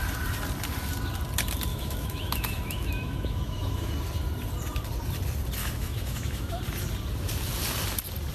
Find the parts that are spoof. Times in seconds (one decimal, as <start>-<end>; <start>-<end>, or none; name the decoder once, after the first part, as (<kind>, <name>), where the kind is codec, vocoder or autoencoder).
1.7-3.9 (autoencoder, DAC-VAE); 5.6-6.6